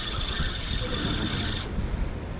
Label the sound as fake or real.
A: real